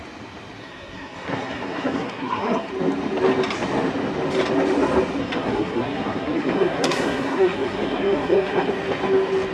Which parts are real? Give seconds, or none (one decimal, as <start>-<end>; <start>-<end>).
0.0-0.6; 2.7-5.2; 8.7-9.5